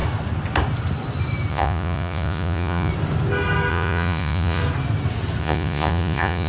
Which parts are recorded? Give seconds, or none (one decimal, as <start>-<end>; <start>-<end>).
0.0-1.5; 2.9-3.7; 4.6-5.4